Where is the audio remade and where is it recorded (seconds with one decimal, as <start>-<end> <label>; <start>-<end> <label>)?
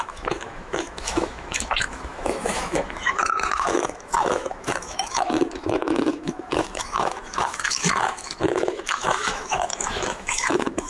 0.0-10.9 remade